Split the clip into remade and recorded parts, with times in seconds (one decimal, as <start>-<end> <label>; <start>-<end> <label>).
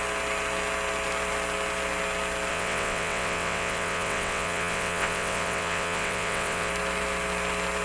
0.0-2.5 recorded; 2.5-6.7 remade; 6.7-7.8 recorded